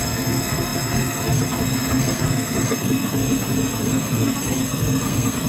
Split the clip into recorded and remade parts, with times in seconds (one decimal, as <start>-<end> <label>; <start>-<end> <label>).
0.0-3.2 remade; 3.2-3.8 recorded; 3.8-5.5 remade

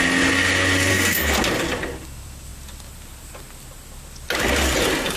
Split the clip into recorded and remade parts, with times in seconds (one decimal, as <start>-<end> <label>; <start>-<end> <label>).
0.0-0.9 recorded; 0.9-1.4 remade; 1.4-5.2 recorded